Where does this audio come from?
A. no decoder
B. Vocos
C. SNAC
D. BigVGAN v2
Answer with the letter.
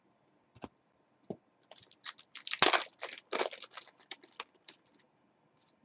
A